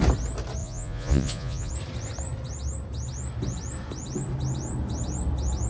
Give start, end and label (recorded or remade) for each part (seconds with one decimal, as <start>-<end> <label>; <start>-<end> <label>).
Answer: 0.0-0.6 recorded; 0.6-1.7 remade; 1.7-5.7 recorded